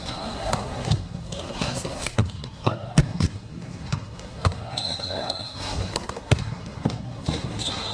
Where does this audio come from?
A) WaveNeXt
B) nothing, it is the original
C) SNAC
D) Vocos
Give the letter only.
C